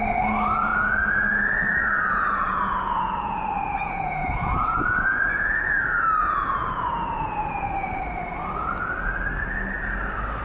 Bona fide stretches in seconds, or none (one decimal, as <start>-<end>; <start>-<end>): 0.0-0.7; 5.7-6.2; 8.0-10.4